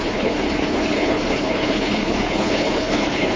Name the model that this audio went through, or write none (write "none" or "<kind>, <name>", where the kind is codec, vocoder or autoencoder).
codec, HILCodec